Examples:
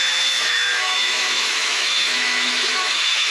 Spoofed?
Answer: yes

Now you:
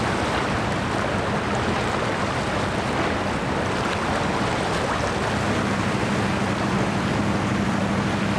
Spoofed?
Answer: no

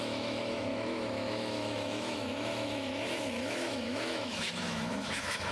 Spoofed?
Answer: yes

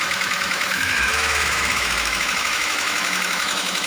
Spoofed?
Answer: yes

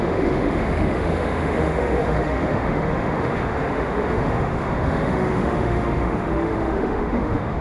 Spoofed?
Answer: yes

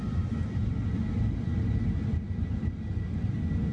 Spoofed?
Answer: no